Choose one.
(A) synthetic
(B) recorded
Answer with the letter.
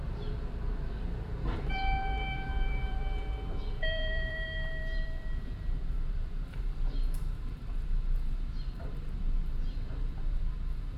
A